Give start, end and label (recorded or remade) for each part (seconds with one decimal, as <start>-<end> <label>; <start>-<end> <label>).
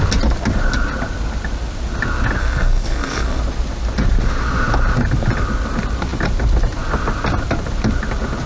0.0-2.4 recorded; 2.4-3.4 remade; 3.4-8.5 recorded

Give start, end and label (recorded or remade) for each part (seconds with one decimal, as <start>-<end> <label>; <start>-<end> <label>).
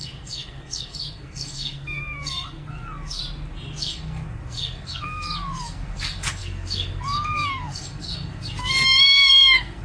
0.0-3.2 remade; 3.2-3.8 recorded; 3.8-9.8 remade